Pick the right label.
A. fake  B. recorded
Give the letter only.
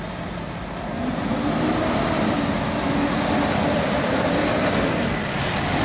B